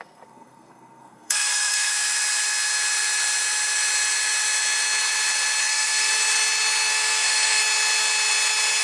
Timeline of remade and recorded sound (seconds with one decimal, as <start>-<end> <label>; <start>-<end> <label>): 0.0-1.9 remade; 1.9-5.6 recorded; 5.6-6.1 remade; 6.1-6.9 recorded; 6.9-7.6 remade; 7.6-8.8 recorded